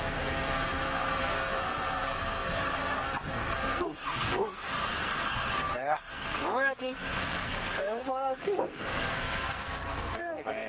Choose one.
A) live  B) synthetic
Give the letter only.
B